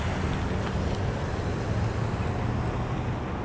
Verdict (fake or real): real